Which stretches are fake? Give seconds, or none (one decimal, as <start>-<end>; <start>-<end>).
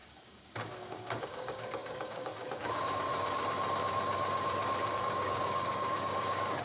0.0-3.1; 4.9-6.6